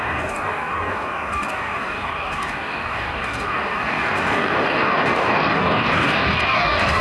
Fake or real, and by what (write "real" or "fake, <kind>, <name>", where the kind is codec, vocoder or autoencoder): fake, codec, DAC